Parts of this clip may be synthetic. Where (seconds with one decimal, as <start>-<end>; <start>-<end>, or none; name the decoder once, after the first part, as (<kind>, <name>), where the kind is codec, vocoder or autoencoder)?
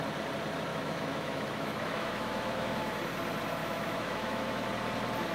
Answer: 0.7-3.0 (autoencoder, DAC-VAE); 3.6-4.7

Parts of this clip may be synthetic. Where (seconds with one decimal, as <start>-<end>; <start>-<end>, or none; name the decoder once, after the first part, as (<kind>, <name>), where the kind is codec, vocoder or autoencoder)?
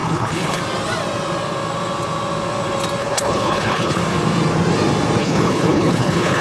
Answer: 0.0-0.6 (codec, HILCodec); 3.0-4.0; 5.2-6.4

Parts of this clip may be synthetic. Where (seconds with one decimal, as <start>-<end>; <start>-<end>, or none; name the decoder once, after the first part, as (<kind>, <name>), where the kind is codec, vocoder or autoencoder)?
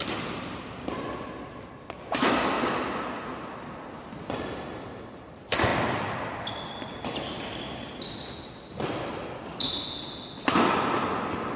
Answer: none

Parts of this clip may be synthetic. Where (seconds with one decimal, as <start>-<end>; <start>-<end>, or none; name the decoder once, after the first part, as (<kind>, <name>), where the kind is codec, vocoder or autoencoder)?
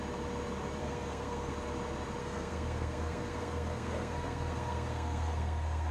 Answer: 0.8-1.5 (codec, SNAC); 2.2-5.9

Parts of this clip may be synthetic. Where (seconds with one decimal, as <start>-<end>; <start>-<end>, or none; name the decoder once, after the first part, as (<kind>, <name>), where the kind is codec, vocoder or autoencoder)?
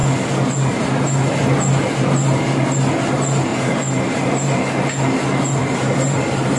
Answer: 3.5-4.7 (vocoder, BigVGAN v2); 5.6-6.6